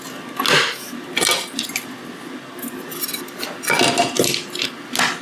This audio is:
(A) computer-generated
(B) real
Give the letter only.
B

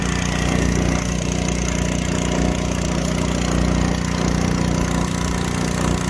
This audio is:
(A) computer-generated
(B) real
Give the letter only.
B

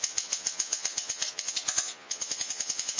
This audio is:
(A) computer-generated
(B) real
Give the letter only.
A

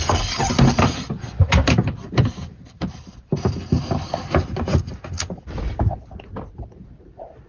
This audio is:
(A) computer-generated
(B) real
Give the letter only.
B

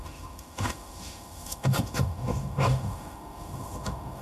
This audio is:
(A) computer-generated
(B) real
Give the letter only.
A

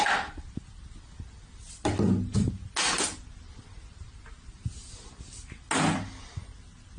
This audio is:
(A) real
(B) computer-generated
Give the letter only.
A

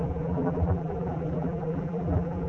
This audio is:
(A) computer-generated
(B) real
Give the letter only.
A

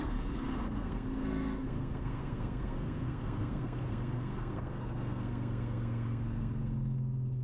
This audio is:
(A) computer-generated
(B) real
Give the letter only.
A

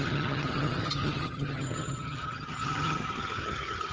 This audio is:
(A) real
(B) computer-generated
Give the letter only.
B